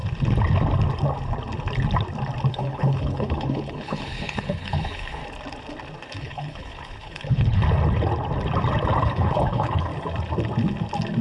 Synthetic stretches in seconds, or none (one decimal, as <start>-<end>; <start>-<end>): 2.5-5.2; 6.2-7.6; 9.0-9.9